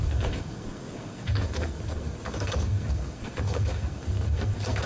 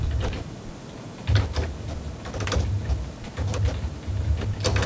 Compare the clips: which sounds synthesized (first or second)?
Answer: first